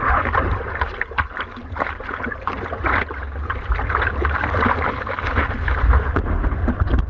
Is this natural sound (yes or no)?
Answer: yes